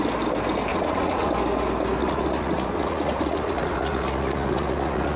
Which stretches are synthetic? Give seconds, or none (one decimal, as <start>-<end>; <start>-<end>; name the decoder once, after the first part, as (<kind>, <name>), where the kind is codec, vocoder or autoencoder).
0.7-1.3 (vocoder, Vocos); 2.0-5.2